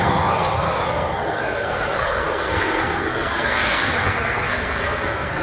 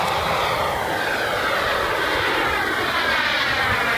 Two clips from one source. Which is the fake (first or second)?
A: first